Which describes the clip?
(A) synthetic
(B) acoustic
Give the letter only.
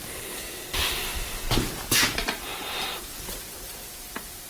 B